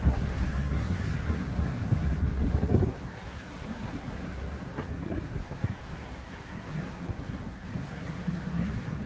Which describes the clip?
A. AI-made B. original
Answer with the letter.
A